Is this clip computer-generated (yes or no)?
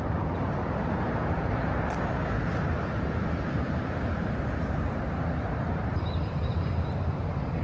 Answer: yes